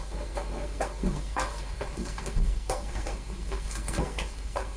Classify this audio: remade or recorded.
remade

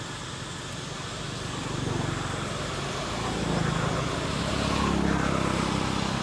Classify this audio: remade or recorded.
recorded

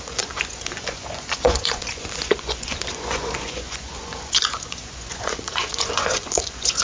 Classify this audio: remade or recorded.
remade